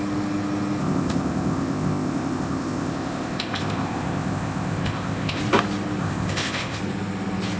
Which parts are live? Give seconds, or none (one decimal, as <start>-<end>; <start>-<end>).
0.0-0.8; 5.4-6.0; 6.8-7.6